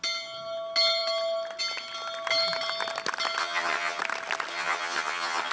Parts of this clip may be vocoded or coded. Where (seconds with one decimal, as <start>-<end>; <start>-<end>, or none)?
3.4-4.0; 4.5-5.5